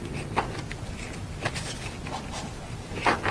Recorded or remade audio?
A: recorded